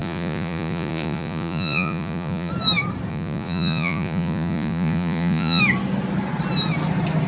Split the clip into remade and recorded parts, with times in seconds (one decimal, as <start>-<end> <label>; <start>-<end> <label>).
0.0-2.5 remade; 2.5-3.1 recorded; 3.1-5.6 remade; 5.6-7.3 recorded